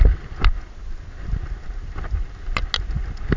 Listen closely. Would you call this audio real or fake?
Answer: real